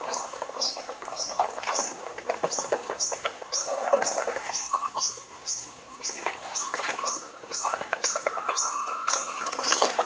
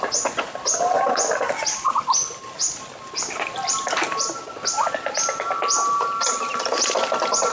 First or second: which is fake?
first